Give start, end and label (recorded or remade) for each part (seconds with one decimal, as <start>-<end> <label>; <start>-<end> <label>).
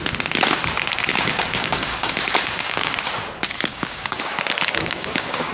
0.0-1.1 recorded; 1.1-2.9 remade; 2.9-3.7 recorded; 3.7-4.2 remade; 4.2-4.8 recorded; 4.8-5.5 remade